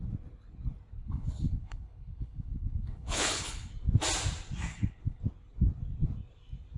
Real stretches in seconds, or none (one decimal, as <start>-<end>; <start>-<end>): 0.0-0.9; 3.7-4.7; 5.2-6.8